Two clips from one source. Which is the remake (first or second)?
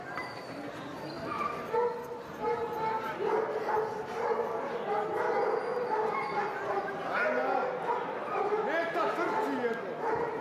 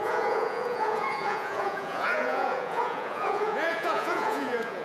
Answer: second